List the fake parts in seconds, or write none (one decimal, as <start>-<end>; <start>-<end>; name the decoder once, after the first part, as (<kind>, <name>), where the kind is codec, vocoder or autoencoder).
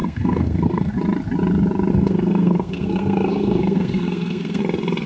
0.0-0.9 (codec, SNAC); 1.9-4.6